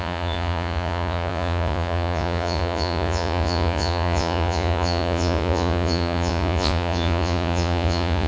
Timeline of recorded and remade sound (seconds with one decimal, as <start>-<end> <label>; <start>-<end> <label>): 0.0-8.3 remade